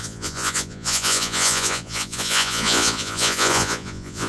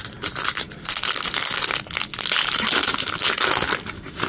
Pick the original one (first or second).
second